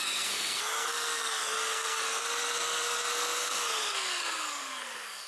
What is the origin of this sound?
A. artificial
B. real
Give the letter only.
A